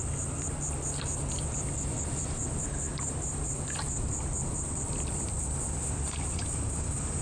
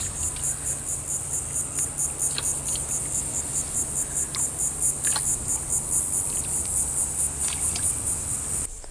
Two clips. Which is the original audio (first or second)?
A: second